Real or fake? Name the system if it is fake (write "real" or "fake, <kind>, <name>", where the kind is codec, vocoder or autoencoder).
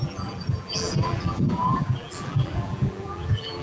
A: fake, vocoder, BigVGAN v2